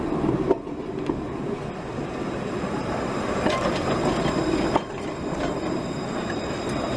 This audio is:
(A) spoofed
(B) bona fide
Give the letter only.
B